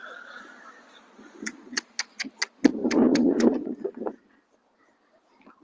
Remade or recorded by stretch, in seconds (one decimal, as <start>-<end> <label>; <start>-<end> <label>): 0.0-1.1 recorded; 1.1-1.8 remade; 1.8-2.8 recorded; 2.8-4.0 remade; 4.0-5.6 recorded